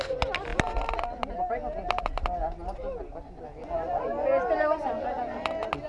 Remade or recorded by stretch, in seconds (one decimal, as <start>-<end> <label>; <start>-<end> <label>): 0.0-5.9 recorded